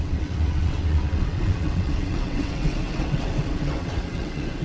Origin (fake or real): fake